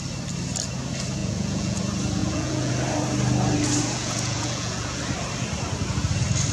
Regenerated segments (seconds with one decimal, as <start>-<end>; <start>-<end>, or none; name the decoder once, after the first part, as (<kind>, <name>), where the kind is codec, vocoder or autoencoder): 1.2-1.8 (vocoder, Vocos); 2.2-2.7; 3.8-5.0